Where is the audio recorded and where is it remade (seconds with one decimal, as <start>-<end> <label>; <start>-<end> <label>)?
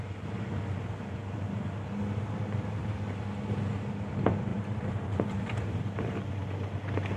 0.0-4.5 recorded; 4.5-6.1 remade; 6.1-7.2 recorded